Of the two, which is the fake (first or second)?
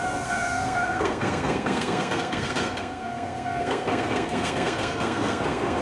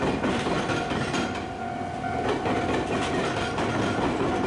first